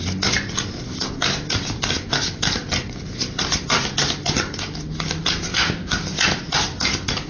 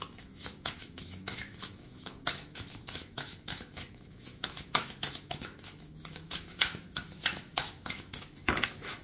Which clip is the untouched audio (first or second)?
first